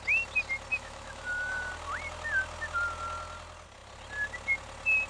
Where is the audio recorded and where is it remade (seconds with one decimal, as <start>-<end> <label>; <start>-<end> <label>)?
0.0-0.7 recorded; 0.7-1.7 remade; 1.7-5.1 recorded